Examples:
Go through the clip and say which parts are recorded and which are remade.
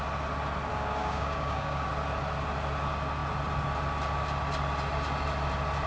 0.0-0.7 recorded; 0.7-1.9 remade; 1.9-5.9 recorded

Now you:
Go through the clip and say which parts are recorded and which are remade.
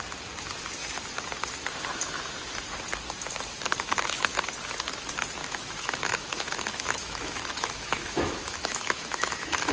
0.0-3.9 recorded; 3.9-4.4 remade; 4.4-5.4 recorded; 5.4-9.7 remade